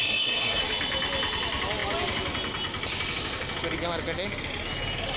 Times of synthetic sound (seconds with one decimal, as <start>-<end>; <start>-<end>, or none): 0.0-0.6